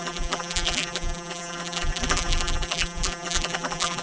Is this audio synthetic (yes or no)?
yes